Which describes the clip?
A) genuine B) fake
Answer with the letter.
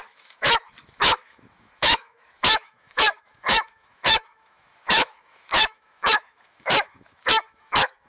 B